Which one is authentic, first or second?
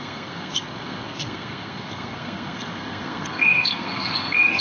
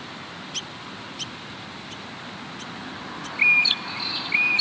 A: second